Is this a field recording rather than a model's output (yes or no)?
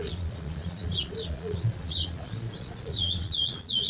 no